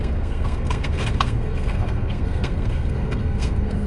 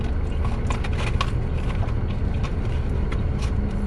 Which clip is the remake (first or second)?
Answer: first